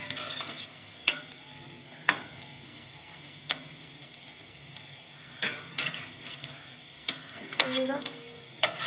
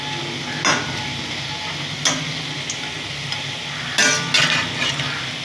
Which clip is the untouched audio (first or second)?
second